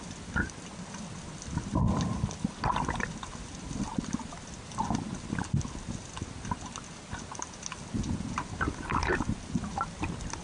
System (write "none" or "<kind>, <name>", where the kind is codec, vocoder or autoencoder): none